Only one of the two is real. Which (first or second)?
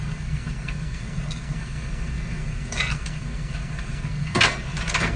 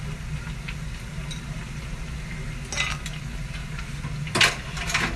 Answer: second